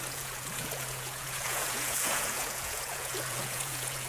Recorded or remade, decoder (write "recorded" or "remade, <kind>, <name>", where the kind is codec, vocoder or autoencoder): remade, vocoder, Vocos